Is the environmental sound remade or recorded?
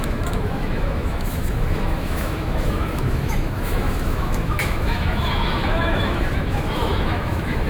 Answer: remade